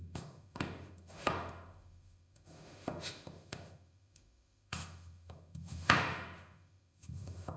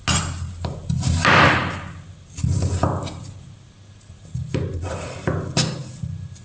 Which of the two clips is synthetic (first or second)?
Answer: first